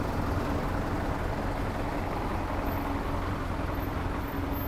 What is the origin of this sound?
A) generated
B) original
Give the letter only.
B